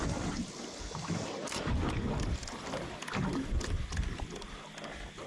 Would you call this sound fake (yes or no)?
no